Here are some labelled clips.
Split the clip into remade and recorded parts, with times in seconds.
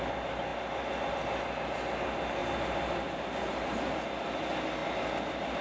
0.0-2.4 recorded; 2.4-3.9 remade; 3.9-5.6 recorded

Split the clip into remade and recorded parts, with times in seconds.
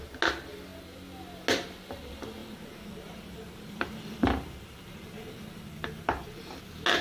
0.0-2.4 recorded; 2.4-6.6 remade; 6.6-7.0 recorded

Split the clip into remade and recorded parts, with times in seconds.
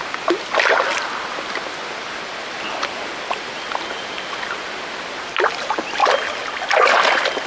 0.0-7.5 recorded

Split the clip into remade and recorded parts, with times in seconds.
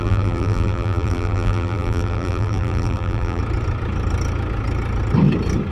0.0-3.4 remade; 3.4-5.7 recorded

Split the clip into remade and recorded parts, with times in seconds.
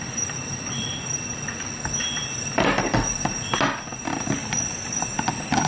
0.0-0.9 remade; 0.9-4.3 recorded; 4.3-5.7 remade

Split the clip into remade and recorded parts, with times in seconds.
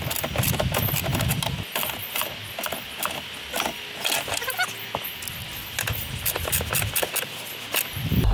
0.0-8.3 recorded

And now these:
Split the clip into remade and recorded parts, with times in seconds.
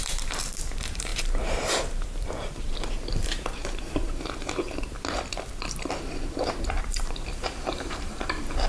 0.0-8.7 remade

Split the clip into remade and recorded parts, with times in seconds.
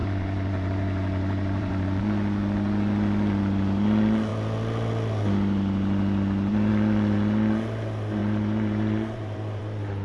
0.0-2.0 remade; 2.0-8.2 recorded; 8.2-9.6 remade; 9.6-10.0 recorded